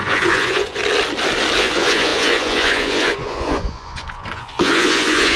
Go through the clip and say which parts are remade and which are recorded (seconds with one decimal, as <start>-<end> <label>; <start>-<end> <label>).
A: 0.0-0.8 remade; 0.8-1.6 recorded; 1.6-5.4 remade